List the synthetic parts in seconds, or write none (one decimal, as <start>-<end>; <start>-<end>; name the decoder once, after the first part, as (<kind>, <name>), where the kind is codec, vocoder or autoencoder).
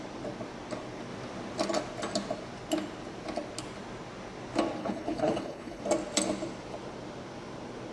4.8-5.8 (codec, HILCodec)